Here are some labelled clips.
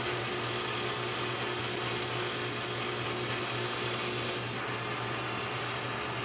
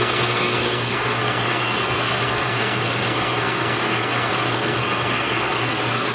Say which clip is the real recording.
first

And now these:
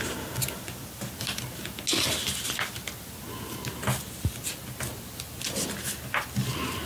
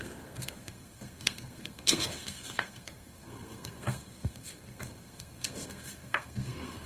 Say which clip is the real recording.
first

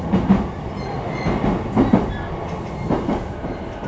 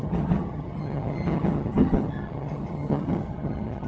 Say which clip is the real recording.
first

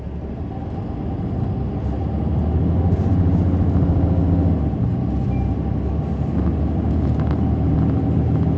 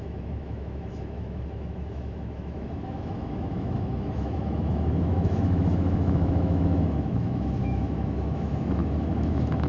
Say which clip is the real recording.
first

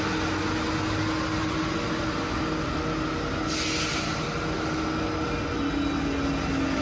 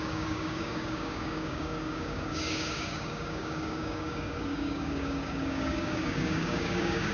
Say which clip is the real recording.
first